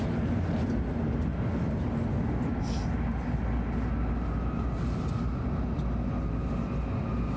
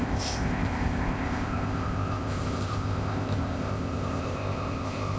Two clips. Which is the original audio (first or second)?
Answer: first